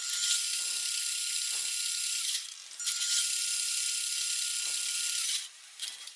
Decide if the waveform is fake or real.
real